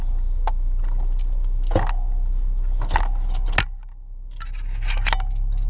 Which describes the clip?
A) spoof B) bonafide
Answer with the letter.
B